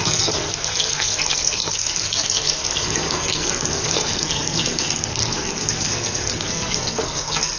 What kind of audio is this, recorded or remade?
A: remade